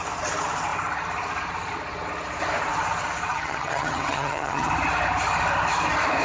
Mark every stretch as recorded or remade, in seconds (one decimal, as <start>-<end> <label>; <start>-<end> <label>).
0.0-3.3 recorded; 3.3-4.7 remade; 4.7-6.2 recorded